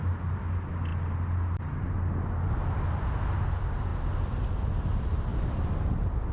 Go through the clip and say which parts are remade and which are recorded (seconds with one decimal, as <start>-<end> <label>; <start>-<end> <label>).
0.0-5.3 recorded; 5.3-6.3 remade